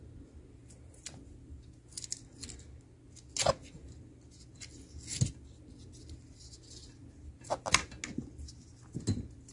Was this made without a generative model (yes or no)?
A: yes